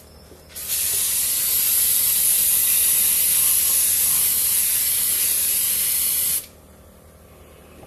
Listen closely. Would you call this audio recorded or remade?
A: recorded